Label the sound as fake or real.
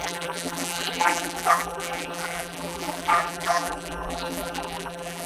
fake